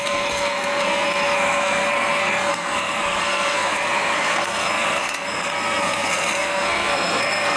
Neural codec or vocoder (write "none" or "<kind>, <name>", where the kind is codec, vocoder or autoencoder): codec, SNAC